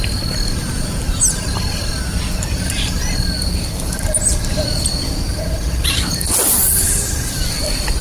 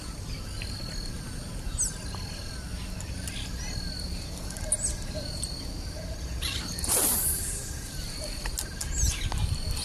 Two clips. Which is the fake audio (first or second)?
first